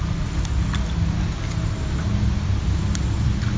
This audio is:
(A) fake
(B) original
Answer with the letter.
B